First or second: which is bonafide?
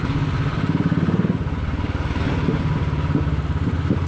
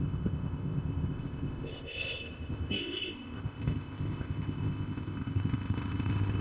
first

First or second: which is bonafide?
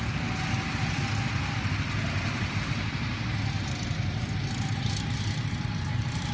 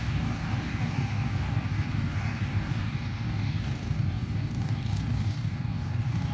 first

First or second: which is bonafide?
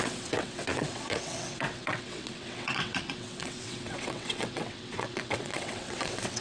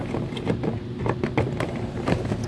second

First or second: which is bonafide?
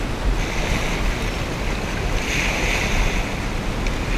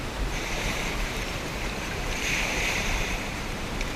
first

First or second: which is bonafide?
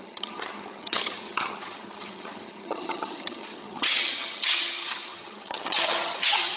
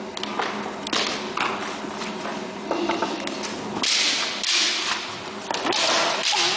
second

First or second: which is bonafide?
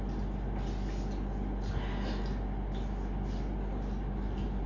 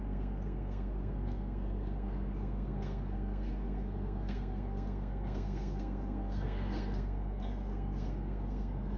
first